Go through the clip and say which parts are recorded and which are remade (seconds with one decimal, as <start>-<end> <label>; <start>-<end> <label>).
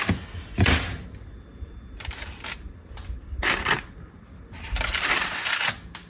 0.0-6.1 recorded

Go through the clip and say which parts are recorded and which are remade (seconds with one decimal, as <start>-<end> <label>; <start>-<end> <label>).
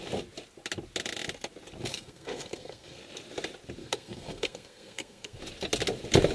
0.0-1.9 recorded; 1.9-3.0 remade; 3.0-3.8 recorded; 3.8-5.4 remade; 5.4-6.3 recorded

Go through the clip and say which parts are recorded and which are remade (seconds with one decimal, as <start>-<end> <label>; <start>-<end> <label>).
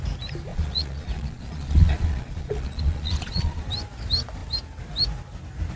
0.0-0.5 recorded; 0.5-3.6 remade; 3.6-5.8 recorded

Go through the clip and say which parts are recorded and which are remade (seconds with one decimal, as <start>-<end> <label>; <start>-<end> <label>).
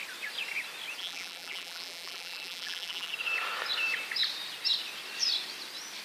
0.0-1.0 recorded; 1.0-3.1 remade; 3.1-6.0 recorded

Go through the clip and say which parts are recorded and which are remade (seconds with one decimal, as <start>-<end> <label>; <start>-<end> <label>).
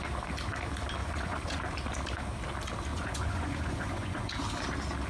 0.0-1.0 recorded; 1.0-1.6 remade; 1.6-2.9 recorded; 2.9-4.3 remade; 4.3-5.1 recorded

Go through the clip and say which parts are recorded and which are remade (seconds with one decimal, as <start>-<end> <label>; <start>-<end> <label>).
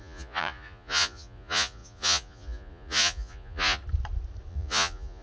0.0-3.8 remade; 3.8-4.5 recorded; 4.5-5.2 remade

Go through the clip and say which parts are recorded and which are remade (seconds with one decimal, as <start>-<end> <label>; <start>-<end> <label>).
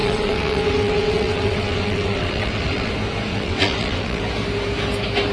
0.0-2.9 remade; 2.9-3.3 recorded; 3.3-4.2 remade; 4.2-5.3 recorded